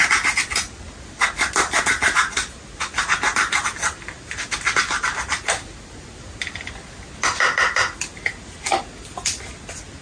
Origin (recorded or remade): recorded